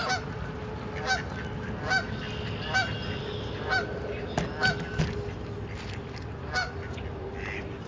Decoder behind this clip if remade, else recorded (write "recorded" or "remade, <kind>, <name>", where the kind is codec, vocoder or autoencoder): recorded